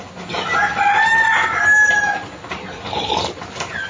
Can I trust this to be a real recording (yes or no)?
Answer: yes